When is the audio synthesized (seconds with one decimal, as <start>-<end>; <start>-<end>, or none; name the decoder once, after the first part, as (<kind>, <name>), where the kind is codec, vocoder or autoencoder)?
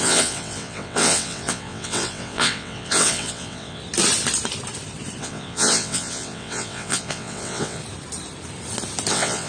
0.0-3.8 (vocoder, WaveNeXt); 5.2-7.8; 9.1-9.5